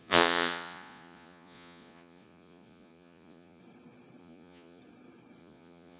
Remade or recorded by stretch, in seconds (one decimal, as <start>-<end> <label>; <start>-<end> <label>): 0.0-3.6 remade; 3.6-4.2 recorded; 4.2-4.8 remade; 4.8-5.4 recorded; 5.4-6.0 remade

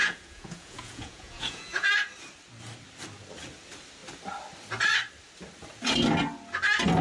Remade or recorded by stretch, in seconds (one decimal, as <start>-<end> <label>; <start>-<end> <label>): 0.0-1.9 remade; 1.9-7.0 recorded